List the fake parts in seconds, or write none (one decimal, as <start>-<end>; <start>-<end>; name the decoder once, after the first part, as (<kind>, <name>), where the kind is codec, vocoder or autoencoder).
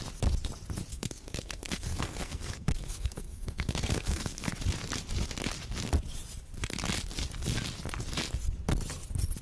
0.9-4.5 (codec, SNAC)